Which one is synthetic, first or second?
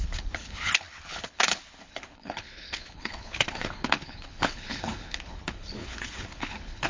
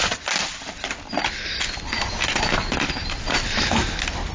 first